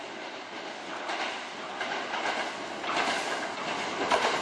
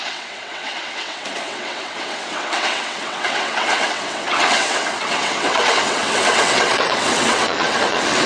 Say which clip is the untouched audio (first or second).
first